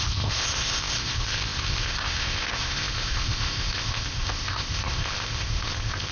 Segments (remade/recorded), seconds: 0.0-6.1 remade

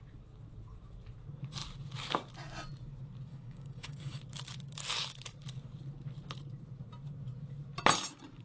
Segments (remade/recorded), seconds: 0.0-3.3 recorded; 3.3-4.2 remade; 4.2-8.4 recorded

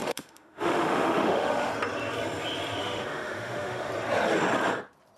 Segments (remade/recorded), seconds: 0.0-1.7 remade; 1.7-2.8 recorded; 2.8-3.9 remade; 3.9-5.2 recorded

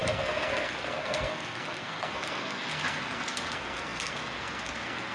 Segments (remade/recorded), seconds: 0.0-5.1 remade

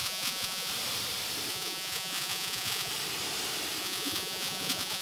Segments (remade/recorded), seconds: 0.0-0.7 remade; 0.7-1.5 recorded; 1.5-2.9 remade; 2.9-3.8 recorded; 3.8-5.0 remade

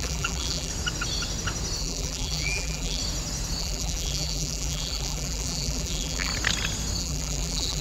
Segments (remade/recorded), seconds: 0.0-0.7 remade; 0.7-1.8 recorded; 1.8-3.0 remade; 3.0-3.6 recorded; 3.6-6.3 remade; 6.3-7.0 recorded; 7.0-7.8 remade

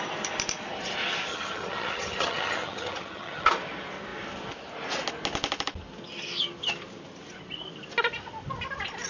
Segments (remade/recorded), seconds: 0.0-1.3 recorded; 1.3-3.5 remade; 3.5-9.1 recorded